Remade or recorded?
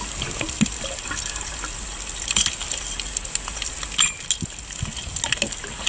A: recorded